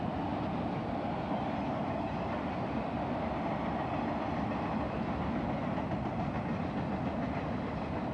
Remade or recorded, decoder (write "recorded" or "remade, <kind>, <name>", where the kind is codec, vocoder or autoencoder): recorded